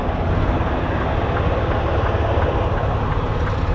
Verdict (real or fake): real